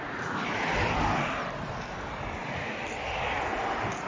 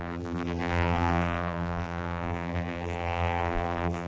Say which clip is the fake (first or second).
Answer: second